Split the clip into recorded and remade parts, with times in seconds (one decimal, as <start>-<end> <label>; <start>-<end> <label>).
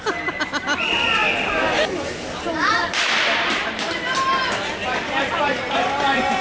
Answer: 0.0-1.2 recorded; 1.2-3.7 remade; 3.7-4.8 recorded; 4.8-5.4 remade; 5.4-6.4 recorded